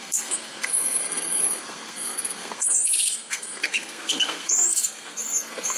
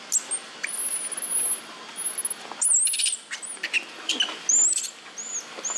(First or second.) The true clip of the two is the second